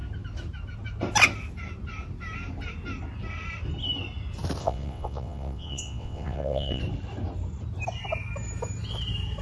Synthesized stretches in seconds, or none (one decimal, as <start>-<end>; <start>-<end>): 4.6-6.8